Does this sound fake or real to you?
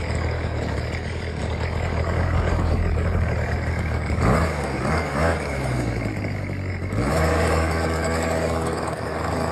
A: fake